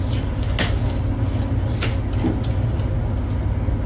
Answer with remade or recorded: recorded